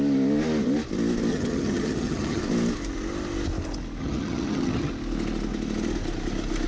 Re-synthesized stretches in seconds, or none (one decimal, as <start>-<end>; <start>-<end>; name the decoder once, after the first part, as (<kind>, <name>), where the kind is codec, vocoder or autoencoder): 1.3-2.4 (vocoder, HiFi-GAN); 4.0-4.9